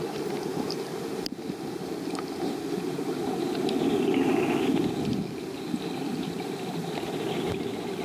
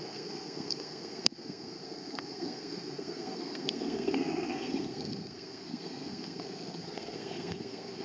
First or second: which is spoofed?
second